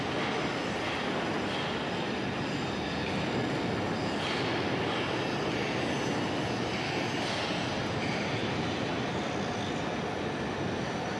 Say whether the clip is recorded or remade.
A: recorded